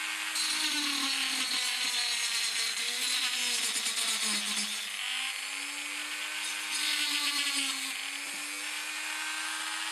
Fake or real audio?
real